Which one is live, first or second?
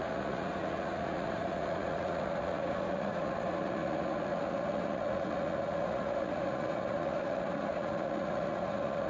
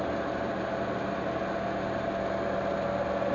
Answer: second